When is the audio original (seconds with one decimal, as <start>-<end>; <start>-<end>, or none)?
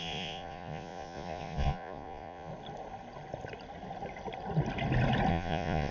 2.5-5.3